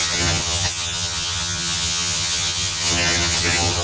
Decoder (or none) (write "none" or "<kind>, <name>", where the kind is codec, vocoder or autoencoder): vocoder, HiFi-GAN